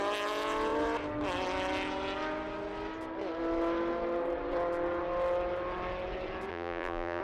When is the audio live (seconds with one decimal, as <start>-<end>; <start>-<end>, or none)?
0.0-6.5